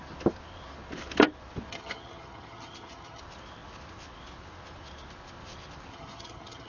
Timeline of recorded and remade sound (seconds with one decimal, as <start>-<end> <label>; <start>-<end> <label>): 0.0-1.7 recorded; 1.7-3.2 remade; 3.2-5.9 recorded; 5.9-6.7 remade